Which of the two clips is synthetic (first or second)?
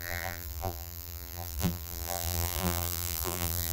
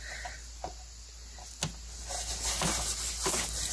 first